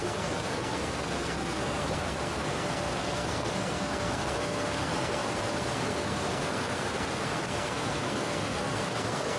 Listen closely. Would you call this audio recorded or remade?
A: remade